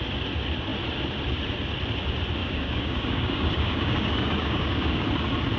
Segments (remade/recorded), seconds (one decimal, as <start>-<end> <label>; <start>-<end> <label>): 0.0-2.4 recorded; 2.4-5.1 remade; 5.1-5.6 recorded